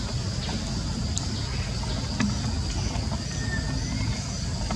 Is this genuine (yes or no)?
yes